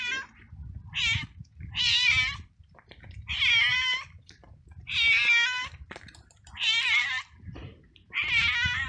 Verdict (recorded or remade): remade